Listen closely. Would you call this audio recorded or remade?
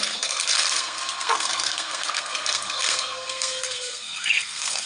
remade